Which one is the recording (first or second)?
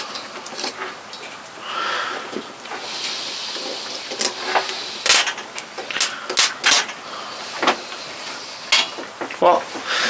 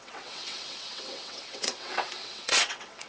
first